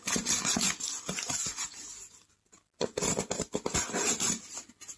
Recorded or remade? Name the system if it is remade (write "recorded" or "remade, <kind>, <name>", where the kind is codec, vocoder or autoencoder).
recorded